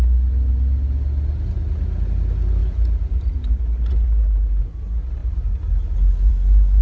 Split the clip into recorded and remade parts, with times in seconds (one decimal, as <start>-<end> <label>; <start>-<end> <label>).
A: 0.0-2.6 recorded; 2.6-4.6 remade; 4.6-6.8 recorded